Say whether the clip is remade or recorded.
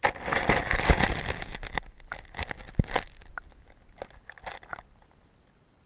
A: recorded